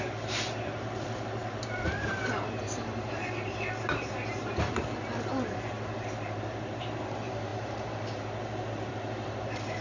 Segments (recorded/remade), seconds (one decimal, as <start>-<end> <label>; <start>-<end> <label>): 0.0-9.8 remade